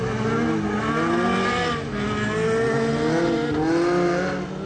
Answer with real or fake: real